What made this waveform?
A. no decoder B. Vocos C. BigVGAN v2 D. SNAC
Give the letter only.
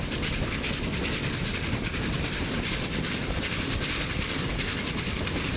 A